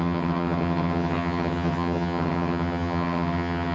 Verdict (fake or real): fake